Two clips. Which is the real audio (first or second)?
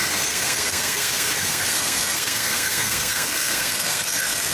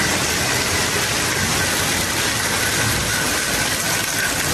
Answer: second